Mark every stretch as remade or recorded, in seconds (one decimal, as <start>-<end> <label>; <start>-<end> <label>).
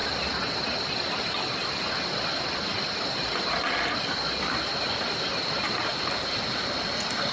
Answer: 0.0-7.3 recorded